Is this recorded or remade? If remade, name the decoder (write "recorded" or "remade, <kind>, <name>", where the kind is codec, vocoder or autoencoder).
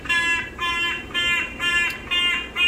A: recorded